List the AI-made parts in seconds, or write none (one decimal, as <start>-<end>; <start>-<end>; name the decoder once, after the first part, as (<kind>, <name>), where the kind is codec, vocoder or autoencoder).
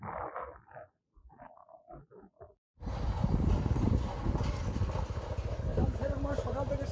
none